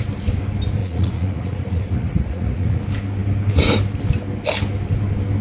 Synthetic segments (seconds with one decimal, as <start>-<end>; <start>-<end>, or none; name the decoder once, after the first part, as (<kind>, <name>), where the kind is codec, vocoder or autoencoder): 0.8-2.8 (vocoder, Vocos)